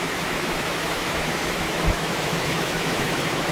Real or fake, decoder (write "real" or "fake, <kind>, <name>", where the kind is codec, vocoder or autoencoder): fake, autoencoder, DAC-VAE